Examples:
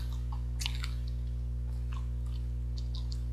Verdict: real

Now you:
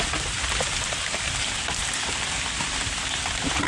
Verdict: fake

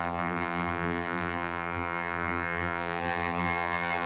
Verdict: fake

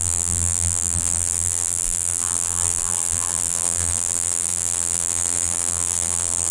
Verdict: fake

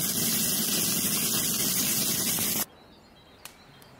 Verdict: real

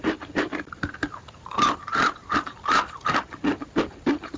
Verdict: fake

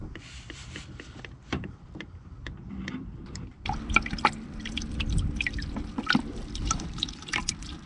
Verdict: fake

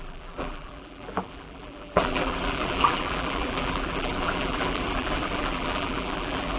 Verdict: fake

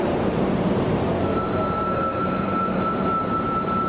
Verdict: fake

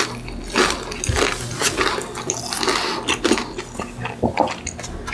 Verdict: real